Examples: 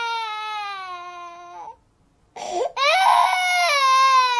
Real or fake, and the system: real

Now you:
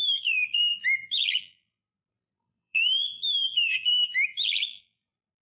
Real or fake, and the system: fake, vocoder, BigVGAN v2